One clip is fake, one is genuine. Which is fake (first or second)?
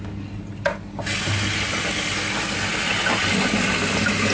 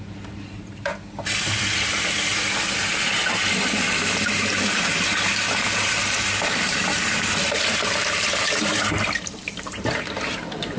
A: second